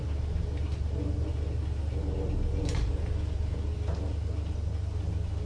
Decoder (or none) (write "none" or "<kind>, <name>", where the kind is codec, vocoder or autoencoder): none